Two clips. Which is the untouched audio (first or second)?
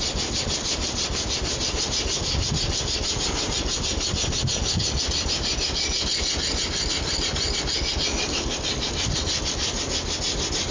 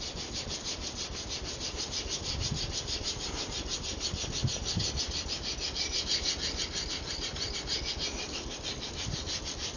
first